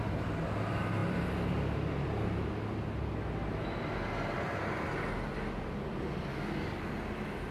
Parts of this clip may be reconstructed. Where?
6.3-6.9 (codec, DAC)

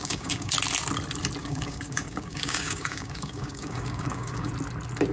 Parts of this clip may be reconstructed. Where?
0.0-0.5 (codec, DAC); 1.4-4.5

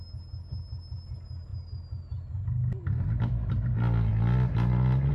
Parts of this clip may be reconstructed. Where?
none

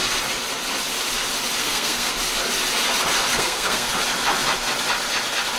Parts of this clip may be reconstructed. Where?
1.6-2.1 (codec, SNAC); 3.3-3.9